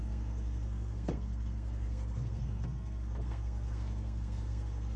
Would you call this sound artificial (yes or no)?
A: yes